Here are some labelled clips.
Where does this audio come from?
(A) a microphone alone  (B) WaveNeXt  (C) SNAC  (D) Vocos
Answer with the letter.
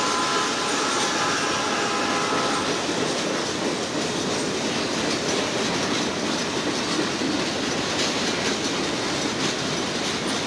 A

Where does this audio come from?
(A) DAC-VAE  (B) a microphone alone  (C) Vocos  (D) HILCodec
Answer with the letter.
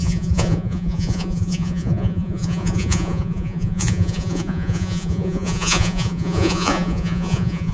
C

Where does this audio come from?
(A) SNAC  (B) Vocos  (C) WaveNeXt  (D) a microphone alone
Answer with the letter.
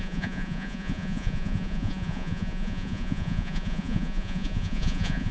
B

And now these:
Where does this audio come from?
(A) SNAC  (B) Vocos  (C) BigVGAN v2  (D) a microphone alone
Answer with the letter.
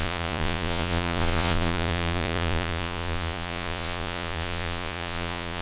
B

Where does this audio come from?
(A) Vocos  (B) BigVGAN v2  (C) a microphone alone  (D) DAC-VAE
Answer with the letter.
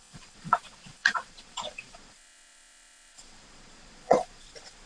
A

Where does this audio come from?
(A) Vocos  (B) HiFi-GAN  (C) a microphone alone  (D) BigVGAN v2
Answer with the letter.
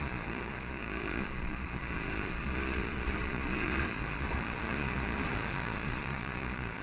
A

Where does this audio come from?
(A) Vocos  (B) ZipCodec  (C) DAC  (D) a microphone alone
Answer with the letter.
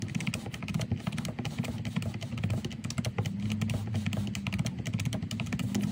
D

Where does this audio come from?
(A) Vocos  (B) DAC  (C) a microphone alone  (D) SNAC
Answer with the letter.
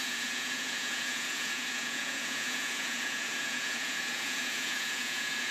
A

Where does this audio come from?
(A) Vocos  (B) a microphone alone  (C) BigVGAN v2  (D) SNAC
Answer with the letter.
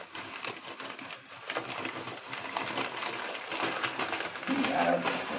B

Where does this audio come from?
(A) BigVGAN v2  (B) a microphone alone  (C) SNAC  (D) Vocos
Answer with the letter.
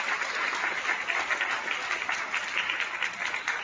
B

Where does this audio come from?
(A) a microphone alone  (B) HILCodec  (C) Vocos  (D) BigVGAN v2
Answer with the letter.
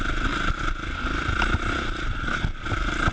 A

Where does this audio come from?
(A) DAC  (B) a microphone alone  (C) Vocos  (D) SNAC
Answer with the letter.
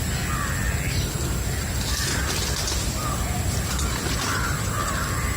B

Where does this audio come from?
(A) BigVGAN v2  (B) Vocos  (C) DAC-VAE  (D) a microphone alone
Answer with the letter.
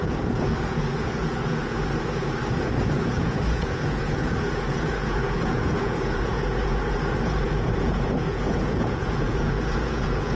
B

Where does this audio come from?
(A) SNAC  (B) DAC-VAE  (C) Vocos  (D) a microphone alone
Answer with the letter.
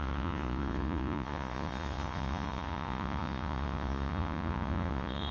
C